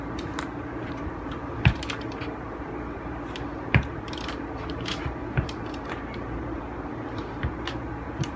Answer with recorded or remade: remade